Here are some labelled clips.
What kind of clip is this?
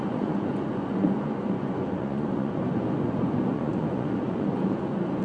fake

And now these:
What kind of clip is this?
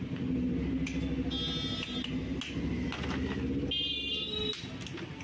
real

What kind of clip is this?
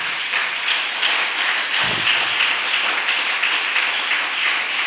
real